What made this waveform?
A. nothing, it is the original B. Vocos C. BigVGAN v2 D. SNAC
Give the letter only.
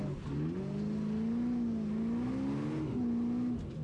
A